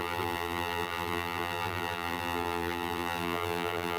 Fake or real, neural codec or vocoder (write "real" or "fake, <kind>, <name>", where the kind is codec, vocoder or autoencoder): fake, vocoder, BigVGAN v2